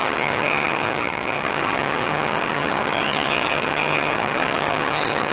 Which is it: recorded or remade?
remade